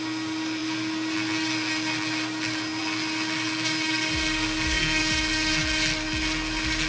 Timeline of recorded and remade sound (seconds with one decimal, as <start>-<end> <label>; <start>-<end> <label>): 0.0-3.9 recorded; 3.9-5.0 remade; 5.0-6.9 recorded